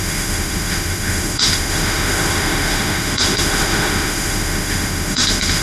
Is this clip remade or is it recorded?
remade